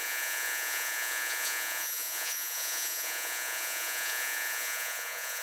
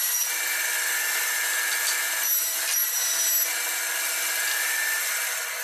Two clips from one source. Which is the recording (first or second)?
second